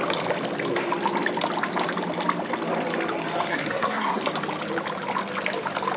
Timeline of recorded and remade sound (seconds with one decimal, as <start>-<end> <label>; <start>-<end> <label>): 0.0-3.5 recorded; 3.5-4.2 remade; 4.2-6.0 recorded